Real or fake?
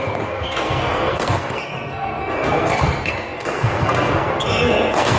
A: fake